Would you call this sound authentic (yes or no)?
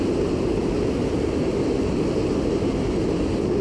yes